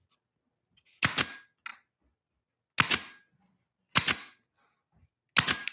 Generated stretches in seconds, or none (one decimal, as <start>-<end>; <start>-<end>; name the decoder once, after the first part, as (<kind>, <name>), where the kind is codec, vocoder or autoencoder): none